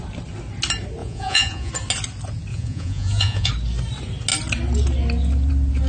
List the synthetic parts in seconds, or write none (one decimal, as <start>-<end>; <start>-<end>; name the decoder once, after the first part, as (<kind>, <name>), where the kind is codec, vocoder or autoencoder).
1.0-1.7 (vocoder, Vocos); 2.5-3.5